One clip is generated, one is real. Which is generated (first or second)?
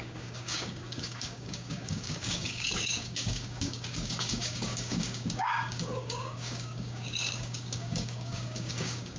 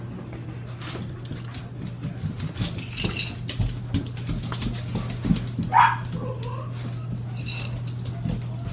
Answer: first